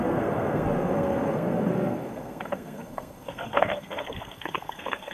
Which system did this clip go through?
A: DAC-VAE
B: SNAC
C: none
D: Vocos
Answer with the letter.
B